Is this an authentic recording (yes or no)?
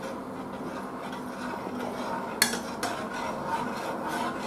yes